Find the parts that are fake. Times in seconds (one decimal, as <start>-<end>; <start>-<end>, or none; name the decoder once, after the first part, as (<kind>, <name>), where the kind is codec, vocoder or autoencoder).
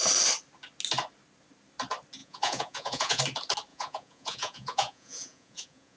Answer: 2.2-3.2 (vocoder, Vocos); 3.7-6.0